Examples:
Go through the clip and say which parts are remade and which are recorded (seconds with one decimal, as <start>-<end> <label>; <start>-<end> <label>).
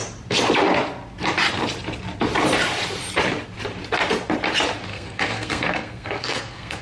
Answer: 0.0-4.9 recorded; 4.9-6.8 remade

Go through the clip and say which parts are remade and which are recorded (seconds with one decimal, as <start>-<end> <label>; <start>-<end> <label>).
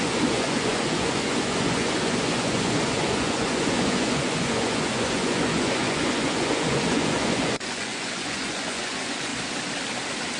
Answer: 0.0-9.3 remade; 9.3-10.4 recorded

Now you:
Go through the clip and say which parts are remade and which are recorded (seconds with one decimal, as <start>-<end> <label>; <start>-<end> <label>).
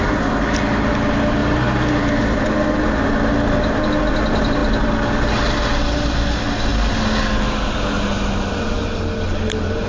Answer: 0.0-9.9 recorded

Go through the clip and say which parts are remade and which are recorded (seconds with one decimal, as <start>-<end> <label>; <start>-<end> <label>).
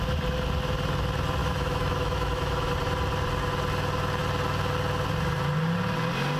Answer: 0.0-1.4 recorded; 1.4-2.7 remade; 2.7-6.4 recorded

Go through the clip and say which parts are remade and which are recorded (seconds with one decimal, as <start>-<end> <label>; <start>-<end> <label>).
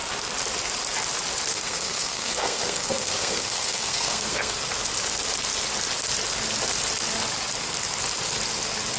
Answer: 0.0-1.5 recorded; 1.5-4.7 remade; 4.7-9.0 recorded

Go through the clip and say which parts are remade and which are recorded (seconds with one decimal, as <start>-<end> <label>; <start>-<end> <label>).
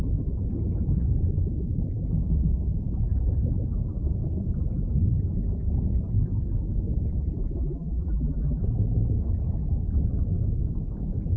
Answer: 0.0-7.6 recorded; 7.6-8.6 remade; 8.6-11.4 recorded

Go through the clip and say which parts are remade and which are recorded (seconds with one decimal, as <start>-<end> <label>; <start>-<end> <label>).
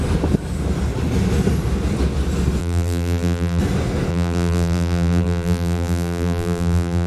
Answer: 0.0-2.6 recorded; 2.6-3.6 remade; 3.6-4.1 recorded; 4.1-7.1 remade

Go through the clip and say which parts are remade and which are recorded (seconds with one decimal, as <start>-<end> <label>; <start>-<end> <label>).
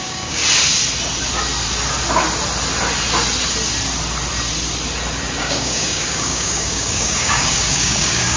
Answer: 0.0-0.4 remade; 0.4-5.4 recorded; 5.4-8.4 remade